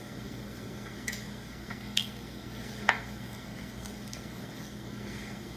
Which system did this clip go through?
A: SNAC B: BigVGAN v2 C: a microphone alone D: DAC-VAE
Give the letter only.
A